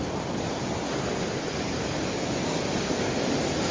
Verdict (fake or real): real